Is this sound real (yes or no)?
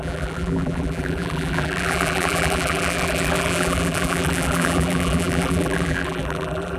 no